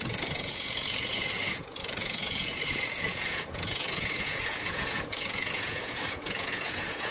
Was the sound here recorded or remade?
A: remade